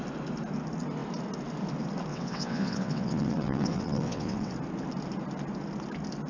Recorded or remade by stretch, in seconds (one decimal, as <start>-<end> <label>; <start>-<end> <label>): 0.0-2.1 recorded; 2.1-4.5 remade; 4.5-6.3 recorded